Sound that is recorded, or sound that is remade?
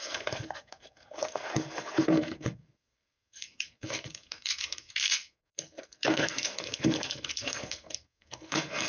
remade